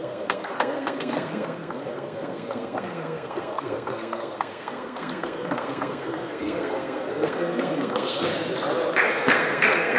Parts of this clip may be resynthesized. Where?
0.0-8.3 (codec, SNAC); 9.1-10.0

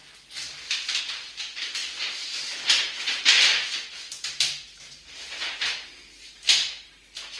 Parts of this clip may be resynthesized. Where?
none

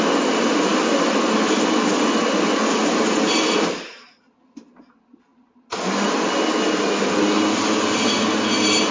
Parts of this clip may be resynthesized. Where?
none

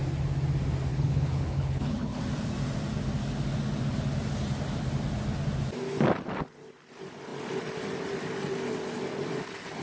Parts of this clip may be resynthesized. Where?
0.9-2.2 (codec, HILCodec)

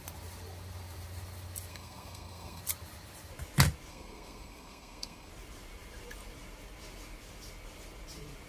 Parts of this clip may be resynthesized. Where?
1.7-2.6 (codec, SNAC); 3.9-5.3

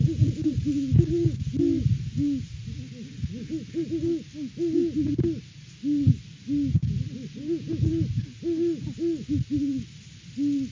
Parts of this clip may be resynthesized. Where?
none

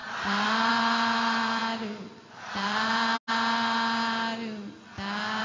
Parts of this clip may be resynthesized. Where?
0.0-1.6 (vocoder, BigVGAN v2); 2.3-3.1